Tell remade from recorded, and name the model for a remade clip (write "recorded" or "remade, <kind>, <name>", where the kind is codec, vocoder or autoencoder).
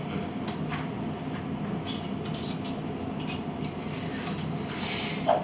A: recorded